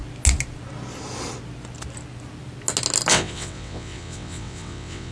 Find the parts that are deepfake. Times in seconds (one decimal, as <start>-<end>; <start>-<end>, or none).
3.1-5.1